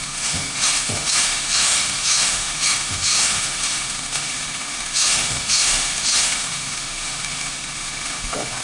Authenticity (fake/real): fake